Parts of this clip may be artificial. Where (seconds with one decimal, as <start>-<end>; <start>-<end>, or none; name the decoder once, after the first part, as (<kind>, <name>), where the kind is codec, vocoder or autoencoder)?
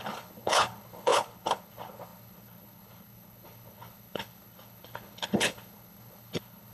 0.0-6.7 (codec, HILCodec)